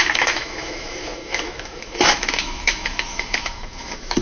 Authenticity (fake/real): fake